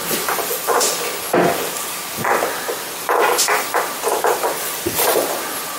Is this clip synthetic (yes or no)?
no